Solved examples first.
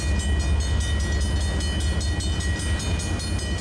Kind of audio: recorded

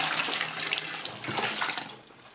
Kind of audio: recorded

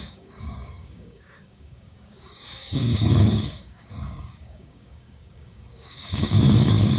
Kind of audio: remade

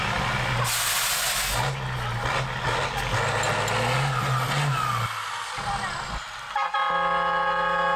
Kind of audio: recorded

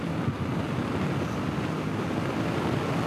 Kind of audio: recorded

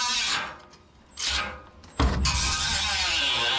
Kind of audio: recorded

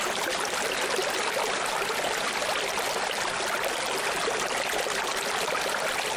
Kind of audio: recorded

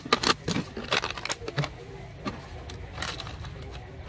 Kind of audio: recorded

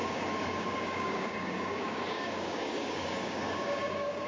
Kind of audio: remade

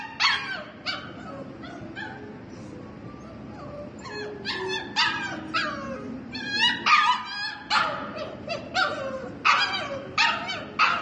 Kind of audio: recorded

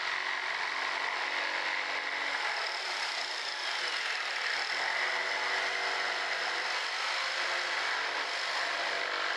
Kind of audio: recorded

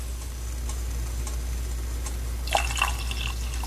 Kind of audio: recorded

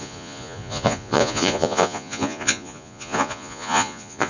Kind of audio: remade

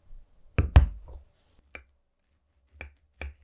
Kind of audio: recorded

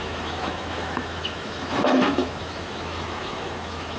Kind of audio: remade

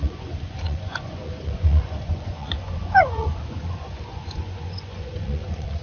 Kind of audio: remade